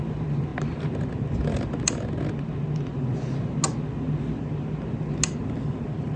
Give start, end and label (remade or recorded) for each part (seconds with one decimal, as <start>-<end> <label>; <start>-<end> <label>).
0.0-6.2 recorded